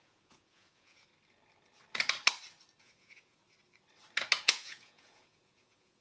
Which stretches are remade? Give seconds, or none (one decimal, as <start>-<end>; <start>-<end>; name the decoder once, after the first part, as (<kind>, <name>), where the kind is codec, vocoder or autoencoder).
0.0-1.1 (vocoder, Vocos); 2.8-3.4; 4.4-6.0